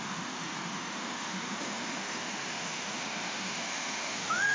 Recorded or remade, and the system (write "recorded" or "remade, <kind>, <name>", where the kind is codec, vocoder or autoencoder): remade, autoencoder, DAC-VAE